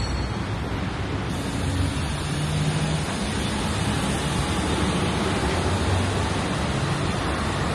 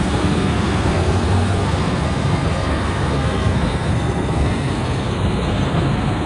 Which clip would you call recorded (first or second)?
first